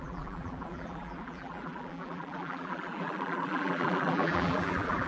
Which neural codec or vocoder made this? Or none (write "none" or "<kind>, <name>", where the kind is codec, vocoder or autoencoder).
vocoder, BigVGAN v2